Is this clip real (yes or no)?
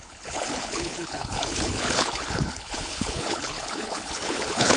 no